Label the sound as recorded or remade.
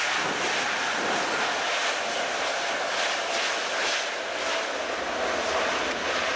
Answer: recorded